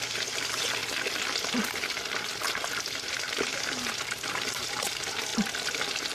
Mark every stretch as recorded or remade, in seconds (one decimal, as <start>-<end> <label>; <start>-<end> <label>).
0.0-0.8 remade; 0.8-2.7 recorded; 2.7-5.3 remade; 5.3-6.1 recorded